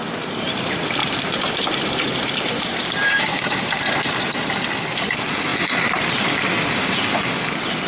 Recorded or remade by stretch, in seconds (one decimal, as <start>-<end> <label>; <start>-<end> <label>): 0.0-1.0 recorded; 1.0-4.0 remade; 4.0-5.5 recorded; 5.5-6.3 remade; 6.3-7.9 recorded

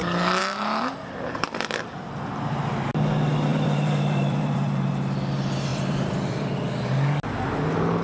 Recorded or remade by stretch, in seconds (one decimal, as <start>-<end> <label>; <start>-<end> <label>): 0.0-3.5 recorded; 3.5-4.9 remade; 4.9-5.7 recorded; 5.7-6.5 remade; 6.5-8.0 recorded

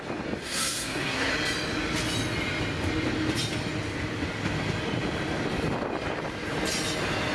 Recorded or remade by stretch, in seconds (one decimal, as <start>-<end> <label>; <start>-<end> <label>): 0.0-0.4 recorded; 0.4-1.3 remade; 1.3-7.3 recorded

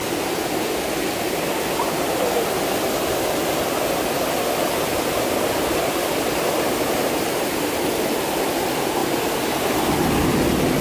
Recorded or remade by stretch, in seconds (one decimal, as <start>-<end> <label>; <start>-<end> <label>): 0.0-10.8 recorded